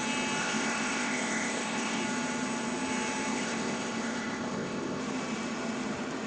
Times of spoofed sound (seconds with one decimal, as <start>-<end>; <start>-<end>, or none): 0.4-2.0; 3.3-5.0